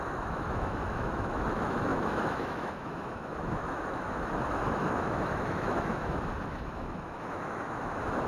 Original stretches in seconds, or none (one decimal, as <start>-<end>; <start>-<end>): none